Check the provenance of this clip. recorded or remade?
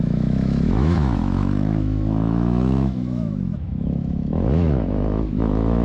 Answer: remade